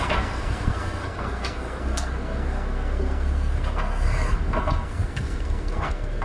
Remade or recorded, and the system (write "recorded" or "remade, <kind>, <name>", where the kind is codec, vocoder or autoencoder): remade, codec, SNAC